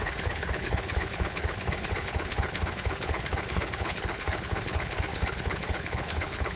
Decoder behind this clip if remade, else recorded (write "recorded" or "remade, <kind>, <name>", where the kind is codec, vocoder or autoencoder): remade, codec, HILCodec